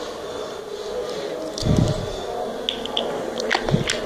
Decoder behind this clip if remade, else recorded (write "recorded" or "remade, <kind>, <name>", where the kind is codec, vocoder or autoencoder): recorded